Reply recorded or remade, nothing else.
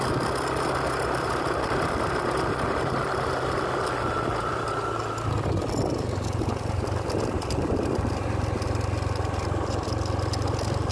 recorded